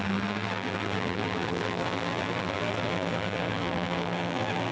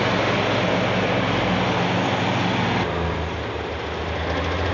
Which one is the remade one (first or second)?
first